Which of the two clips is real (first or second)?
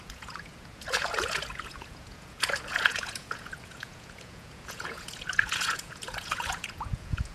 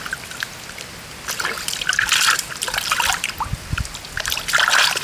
second